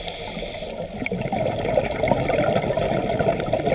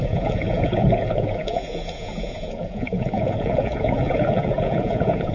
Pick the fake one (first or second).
second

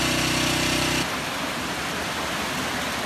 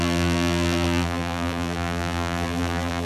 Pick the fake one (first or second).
second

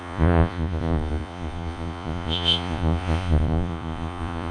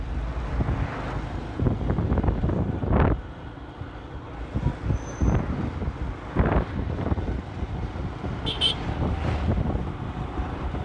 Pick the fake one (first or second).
first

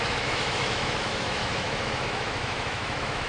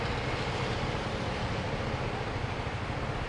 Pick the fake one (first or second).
first